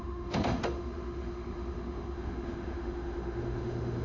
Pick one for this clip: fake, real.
fake